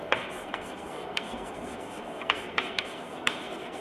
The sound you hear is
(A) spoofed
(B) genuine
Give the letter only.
A